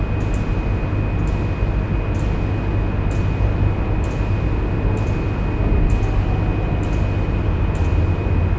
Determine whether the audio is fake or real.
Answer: real